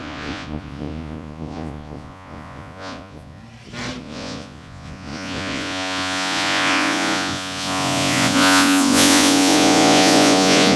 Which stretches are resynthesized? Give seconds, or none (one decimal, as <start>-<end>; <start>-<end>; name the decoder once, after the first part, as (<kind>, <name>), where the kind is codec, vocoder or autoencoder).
0.0-3.4 (vocoder, Vocos); 4.0-10.8